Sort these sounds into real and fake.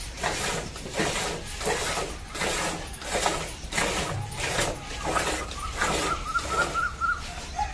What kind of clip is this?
real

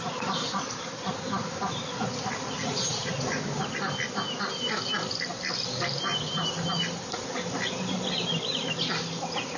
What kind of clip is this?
real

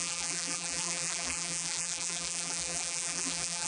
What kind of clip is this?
fake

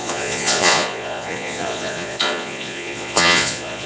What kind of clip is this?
fake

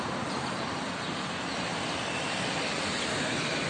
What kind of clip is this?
fake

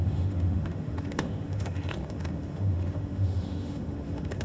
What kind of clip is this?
fake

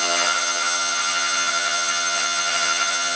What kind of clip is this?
fake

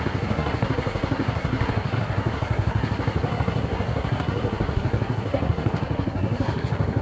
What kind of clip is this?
fake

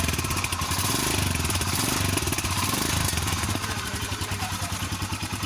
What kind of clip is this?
fake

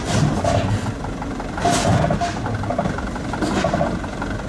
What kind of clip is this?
real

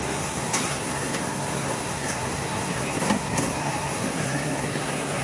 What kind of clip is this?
fake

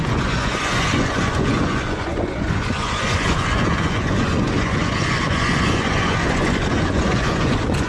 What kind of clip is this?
fake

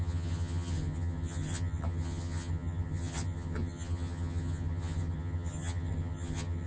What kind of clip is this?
fake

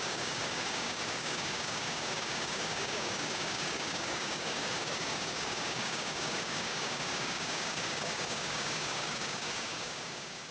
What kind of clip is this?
fake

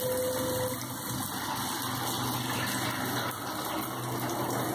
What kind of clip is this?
real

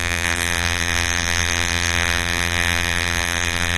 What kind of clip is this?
fake